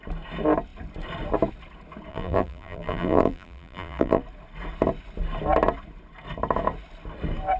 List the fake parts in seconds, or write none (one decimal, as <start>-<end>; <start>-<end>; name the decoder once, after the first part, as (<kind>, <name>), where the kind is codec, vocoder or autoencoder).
2.1-4.2 (vocoder, BigVGAN v2)